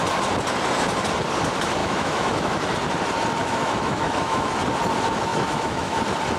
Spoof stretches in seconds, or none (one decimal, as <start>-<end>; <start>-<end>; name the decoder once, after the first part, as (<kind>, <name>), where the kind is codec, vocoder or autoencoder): 1.8-2.6 (autoencoder, DAC-VAE); 3.4-4.5; 5.3-6.0